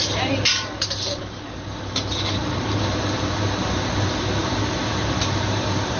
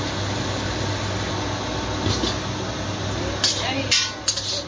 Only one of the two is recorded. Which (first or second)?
second